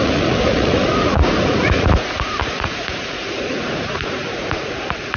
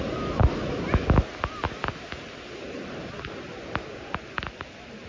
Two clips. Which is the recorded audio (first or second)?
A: second